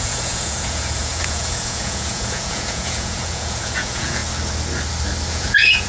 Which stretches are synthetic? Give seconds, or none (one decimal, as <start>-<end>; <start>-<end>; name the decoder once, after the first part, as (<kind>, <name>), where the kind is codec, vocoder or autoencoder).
0.0-4.2 (vocoder, Vocos); 5.3-5.9